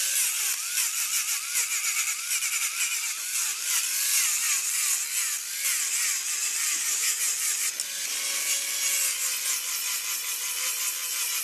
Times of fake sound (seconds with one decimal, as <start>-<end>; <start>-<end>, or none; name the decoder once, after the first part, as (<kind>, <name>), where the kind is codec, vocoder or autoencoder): 6.7-7.2 (codec, DAC)